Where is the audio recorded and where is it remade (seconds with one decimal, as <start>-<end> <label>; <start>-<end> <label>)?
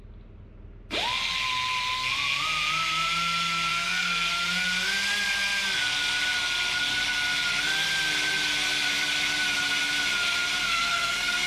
0.0-3.7 recorded; 3.7-4.3 remade; 4.3-10.6 recorded; 10.6-11.5 remade